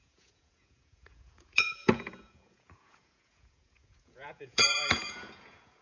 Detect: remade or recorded remade